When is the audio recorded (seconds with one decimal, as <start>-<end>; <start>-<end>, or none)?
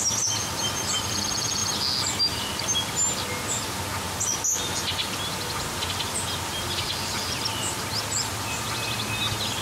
0.0-9.6